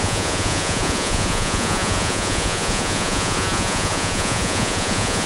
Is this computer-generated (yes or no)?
yes